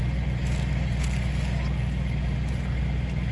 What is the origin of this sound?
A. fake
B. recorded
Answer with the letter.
B